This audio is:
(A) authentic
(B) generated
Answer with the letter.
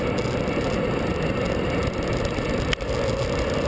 A